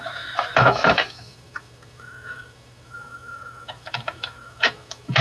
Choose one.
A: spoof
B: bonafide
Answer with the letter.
A